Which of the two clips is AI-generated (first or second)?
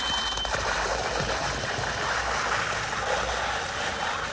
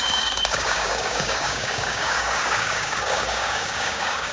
second